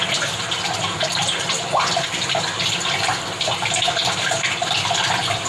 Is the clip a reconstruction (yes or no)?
no